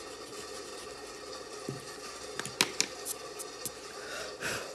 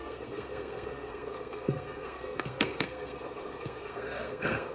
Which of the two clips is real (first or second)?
first